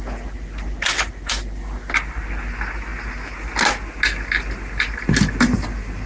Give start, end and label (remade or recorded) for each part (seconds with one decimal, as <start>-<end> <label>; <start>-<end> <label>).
0.0-6.1 recorded